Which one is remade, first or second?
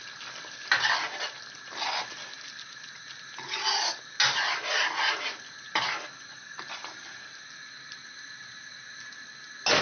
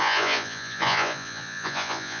second